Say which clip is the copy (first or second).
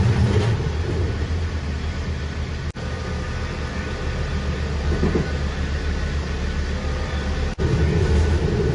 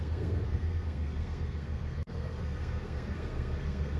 second